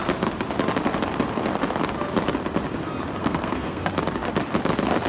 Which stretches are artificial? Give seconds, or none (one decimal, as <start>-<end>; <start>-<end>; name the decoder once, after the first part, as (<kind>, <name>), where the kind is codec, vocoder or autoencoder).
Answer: 3.2-3.9 (codec, SNAC)